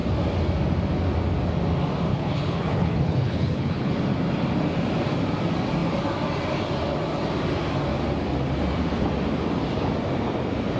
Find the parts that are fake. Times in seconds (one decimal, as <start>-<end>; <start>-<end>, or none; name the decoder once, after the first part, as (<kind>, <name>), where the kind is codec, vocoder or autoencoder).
2.1-3.9 (codec, HILCodec)